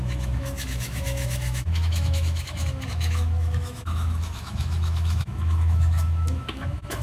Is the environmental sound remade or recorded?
remade